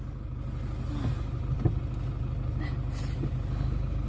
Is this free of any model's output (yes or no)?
yes